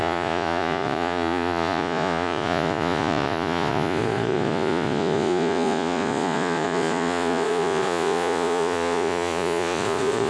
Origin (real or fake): fake